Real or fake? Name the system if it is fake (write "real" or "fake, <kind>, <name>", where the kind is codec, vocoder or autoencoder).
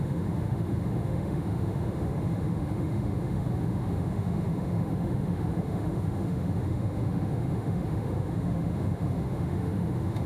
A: fake, autoencoder, DAC-VAE